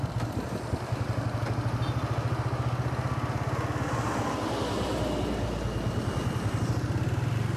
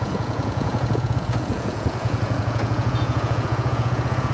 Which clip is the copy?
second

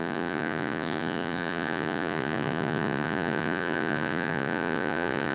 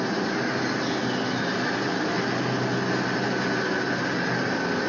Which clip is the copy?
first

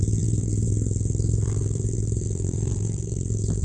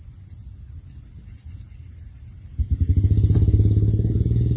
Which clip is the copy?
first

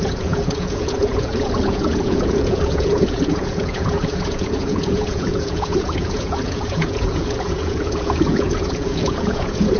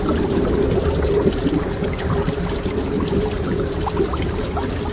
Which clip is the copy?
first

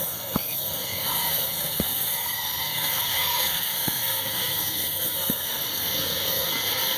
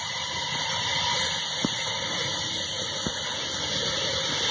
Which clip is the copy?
first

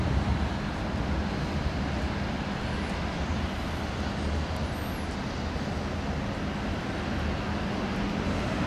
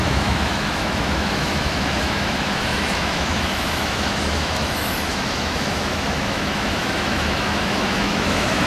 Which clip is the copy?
second